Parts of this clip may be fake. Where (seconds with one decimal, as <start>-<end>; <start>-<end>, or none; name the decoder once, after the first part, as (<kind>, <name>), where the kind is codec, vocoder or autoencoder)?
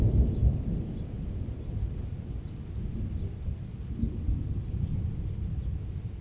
none